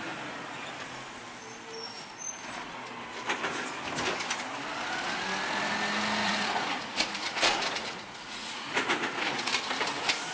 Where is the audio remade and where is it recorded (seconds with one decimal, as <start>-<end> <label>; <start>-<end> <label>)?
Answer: 0.0-6.2 recorded; 6.2-9.5 remade; 9.5-10.3 recorded